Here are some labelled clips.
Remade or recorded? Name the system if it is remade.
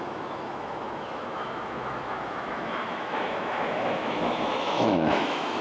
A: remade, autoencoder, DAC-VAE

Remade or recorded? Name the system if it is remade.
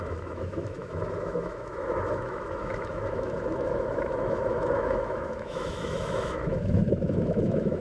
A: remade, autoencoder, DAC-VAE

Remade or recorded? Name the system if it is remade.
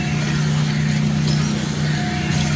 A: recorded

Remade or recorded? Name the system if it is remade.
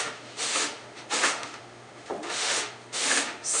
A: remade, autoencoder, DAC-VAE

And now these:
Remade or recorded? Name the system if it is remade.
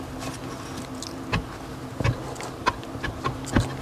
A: recorded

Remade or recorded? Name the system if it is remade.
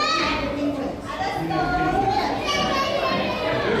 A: recorded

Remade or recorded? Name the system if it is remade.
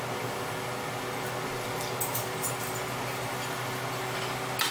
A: recorded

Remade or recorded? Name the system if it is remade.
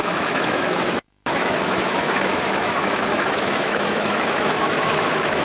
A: remade, autoencoder, DAC-VAE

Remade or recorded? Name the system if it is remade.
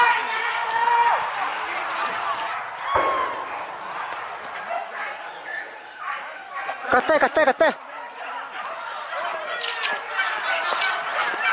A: recorded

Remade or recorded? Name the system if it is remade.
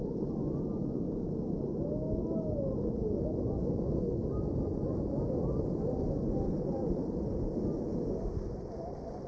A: recorded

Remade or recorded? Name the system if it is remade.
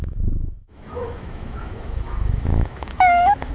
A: remade, autoencoder, DAC-VAE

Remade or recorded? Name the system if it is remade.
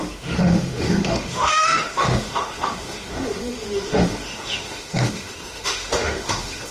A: remade, autoencoder, DAC-VAE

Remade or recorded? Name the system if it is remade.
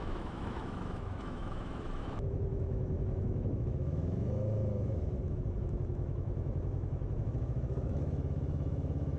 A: remade, autoencoder, DAC-VAE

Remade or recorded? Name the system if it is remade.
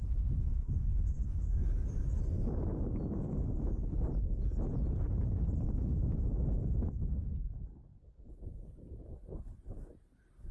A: recorded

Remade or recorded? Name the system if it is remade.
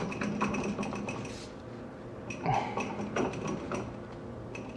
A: recorded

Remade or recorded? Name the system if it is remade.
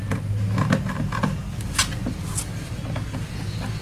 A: recorded